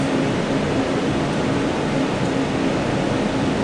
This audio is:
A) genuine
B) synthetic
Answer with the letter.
A